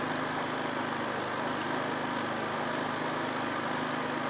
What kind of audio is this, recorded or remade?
recorded